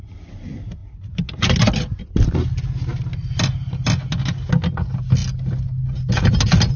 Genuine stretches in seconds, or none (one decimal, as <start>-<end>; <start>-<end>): 0.0-6.8